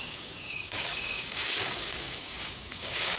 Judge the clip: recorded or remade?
remade